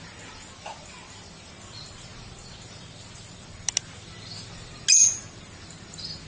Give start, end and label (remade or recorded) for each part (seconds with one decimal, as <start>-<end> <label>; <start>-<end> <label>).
0.0-6.3 recorded